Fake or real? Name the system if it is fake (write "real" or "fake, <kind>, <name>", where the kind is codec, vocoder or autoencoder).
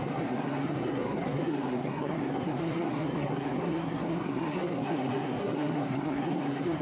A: fake, codec, SNAC